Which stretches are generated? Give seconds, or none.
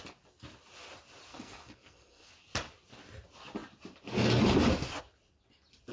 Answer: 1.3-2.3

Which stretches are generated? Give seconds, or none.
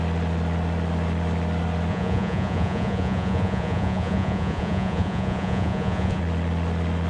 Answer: 1.9-6.2